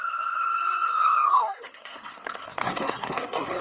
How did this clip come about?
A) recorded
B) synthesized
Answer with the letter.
B